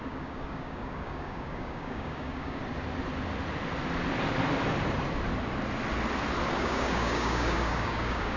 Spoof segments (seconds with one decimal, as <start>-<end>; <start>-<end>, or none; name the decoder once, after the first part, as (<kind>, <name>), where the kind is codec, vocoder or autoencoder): 0.0-2.6 (codec, DAC); 6.5-8.4